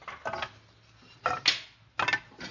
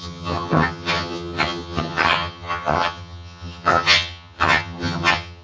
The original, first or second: first